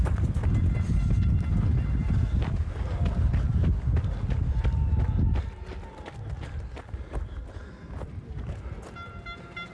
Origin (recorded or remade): recorded